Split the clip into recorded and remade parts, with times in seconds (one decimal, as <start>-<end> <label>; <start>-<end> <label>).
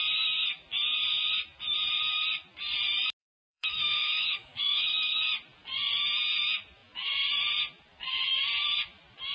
0.0-3.2 recorded; 3.2-5.2 remade; 5.2-9.3 recorded